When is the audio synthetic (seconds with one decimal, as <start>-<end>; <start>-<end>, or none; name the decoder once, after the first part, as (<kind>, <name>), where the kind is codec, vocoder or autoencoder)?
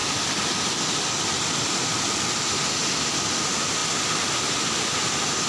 none